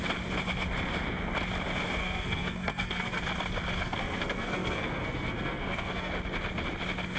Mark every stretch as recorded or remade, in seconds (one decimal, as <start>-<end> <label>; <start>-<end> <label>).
0.0-2.0 recorded; 2.0-3.2 remade; 3.2-3.8 recorded; 3.8-6.1 remade; 6.1-7.2 recorded